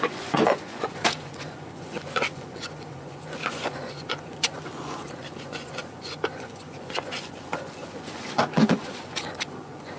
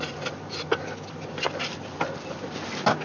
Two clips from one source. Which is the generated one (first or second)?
first